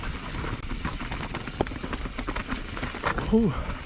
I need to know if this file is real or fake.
real